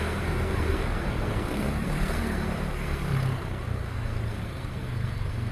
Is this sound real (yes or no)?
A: no